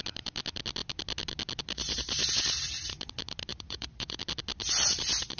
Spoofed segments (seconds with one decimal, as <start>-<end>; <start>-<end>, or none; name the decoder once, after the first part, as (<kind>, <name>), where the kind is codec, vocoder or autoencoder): 3.5-4.2 (vocoder, Vocos)